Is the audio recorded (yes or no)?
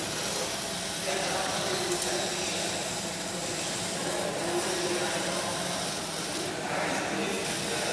yes